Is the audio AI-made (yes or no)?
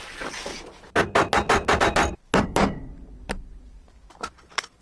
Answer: no